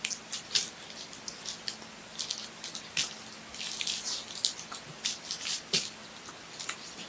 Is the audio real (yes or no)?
yes